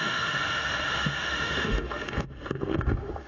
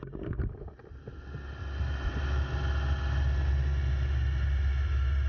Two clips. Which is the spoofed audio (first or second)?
first